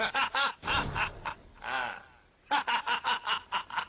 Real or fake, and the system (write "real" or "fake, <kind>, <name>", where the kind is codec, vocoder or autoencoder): real